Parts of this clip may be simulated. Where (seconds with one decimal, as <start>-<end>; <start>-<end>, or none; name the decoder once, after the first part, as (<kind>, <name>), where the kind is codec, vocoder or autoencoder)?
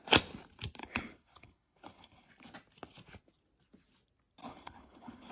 0.8-2.3 (codec, HILCodec); 4.4-5.3